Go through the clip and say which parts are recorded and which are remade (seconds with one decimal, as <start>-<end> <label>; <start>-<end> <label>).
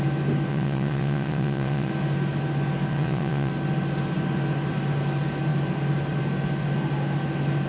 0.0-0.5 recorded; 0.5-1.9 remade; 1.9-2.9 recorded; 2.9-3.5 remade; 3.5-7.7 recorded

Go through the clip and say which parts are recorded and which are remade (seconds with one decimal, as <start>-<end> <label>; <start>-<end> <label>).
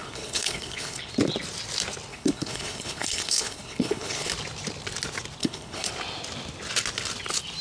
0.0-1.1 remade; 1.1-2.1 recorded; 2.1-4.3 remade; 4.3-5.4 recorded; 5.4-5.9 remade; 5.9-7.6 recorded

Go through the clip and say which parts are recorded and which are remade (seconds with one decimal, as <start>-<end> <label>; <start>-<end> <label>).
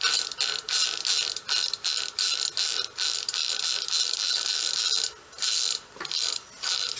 0.0-7.0 recorded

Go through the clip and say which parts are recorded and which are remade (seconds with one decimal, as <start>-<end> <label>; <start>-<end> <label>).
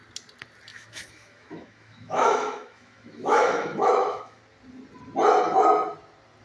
0.0-0.7 recorded; 0.7-4.4 remade; 4.4-6.4 recorded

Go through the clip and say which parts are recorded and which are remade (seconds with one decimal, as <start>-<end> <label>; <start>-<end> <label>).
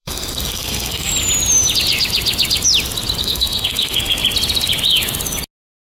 0.0-1.1 remade; 1.1-3.2 recorded; 3.2-4.2 remade; 4.2-6.0 recorded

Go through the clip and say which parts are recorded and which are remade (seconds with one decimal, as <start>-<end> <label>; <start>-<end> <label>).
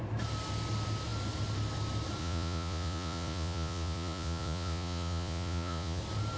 0.0-2.2 recorded; 2.2-6.0 remade; 6.0-6.4 recorded